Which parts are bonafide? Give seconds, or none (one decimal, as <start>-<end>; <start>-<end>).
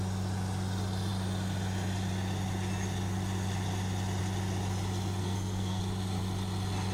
0.0-5.2; 5.8-6.9